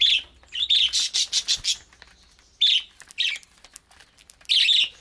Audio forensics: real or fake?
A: real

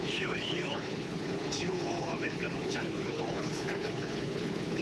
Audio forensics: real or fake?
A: fake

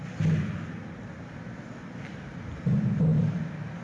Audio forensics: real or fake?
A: real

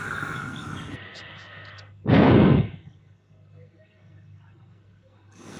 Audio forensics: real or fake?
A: fake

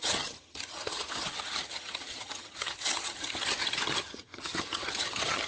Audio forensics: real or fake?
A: fake